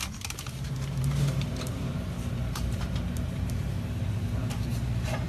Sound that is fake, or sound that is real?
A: fake